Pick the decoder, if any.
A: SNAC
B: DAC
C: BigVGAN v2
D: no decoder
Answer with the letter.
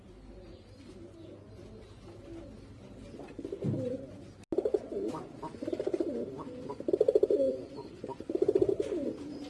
D